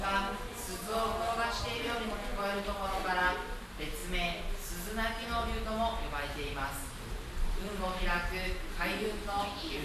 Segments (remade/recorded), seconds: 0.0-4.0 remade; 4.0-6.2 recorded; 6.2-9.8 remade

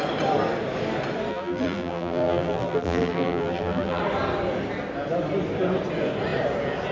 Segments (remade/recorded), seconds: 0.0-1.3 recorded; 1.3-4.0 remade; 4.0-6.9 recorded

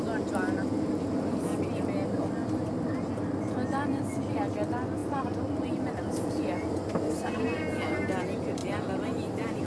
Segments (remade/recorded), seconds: 0.0-2.4 recorded; 2.4-3.1 remade; 3.1-5.0 recorded; 5.0-6.0 remade; 6.0-9.7 recorded

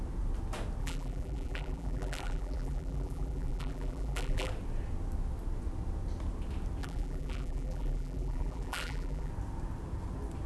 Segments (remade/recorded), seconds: 0.0-0.8 recorded; 0.8-4.5 remade; 4.5-6.8 recorded; 6.8-9.3 remade; 9.3-10.5 recorded